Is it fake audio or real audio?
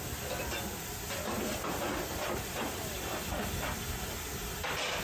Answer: real